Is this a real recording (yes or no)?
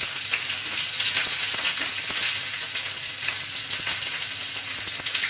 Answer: yes